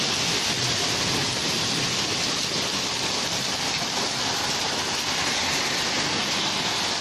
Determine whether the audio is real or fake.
real